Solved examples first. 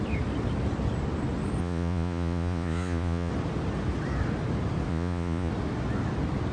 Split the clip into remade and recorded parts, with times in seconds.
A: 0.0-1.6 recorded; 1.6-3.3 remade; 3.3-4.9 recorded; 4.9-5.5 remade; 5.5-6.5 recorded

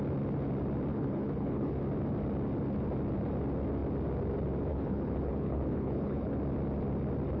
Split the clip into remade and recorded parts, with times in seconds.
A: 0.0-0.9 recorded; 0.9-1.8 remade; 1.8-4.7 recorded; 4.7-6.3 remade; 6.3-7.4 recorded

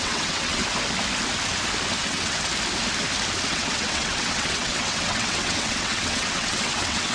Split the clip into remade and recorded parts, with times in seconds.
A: 0.0-0.6 remade; 0.6-2.0 recorded; 2.0-2.5 remade; 2.5-3.5 recorded; 3.5-7.1 remade

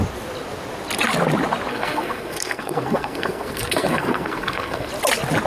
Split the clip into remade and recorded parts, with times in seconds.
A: 0.0-1.7 recorded; 1.7-4.9 remade; 4.9-5.5 recorded

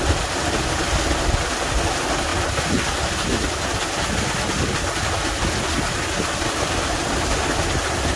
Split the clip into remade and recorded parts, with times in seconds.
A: 0.0-8.2 recorded

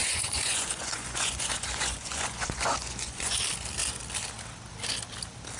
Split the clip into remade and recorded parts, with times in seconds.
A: 0.0-3.4 remade; 3.4-5.6 recorded

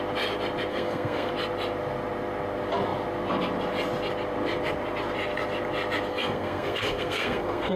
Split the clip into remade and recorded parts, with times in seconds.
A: 0.0-0.7 recorded; 0.7-1.3 remade; 1.3-6.1 recorded; 6.1-7.8 remade

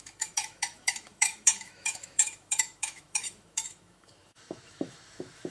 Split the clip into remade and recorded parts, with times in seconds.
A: 0.0-5.5 remade